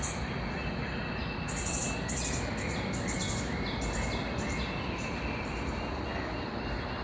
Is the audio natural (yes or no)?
yes